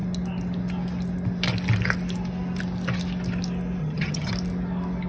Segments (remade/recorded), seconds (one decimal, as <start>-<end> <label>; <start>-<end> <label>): 0.0-3.8 recorded; 3.8-4.3 remade; 4.3-5.1 recorded